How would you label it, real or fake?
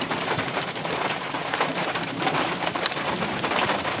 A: fake